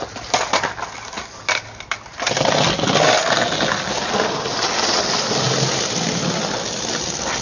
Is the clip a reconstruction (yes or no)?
no